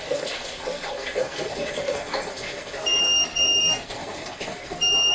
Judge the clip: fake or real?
fake